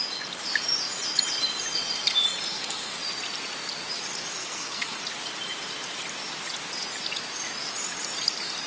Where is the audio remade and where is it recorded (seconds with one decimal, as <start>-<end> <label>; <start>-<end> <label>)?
0.0-2.5 recorded; 2.5-3.0 remade; 3.0-4.4 recorded; 4.4-5.0 remade; 5.0-8.7 recorded